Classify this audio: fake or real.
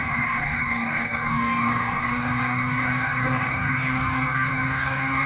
fake